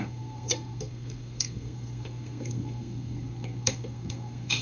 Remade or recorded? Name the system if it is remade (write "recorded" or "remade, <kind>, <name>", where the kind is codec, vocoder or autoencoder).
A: remade, codec, SNAC